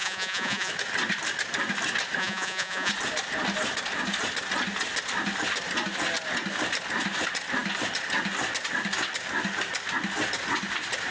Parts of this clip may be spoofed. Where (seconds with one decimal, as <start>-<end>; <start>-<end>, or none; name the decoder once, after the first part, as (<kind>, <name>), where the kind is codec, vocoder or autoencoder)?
0.0-0.7 (vocoder, Vocos); 2.2-2.9